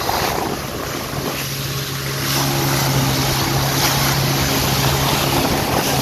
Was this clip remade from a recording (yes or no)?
no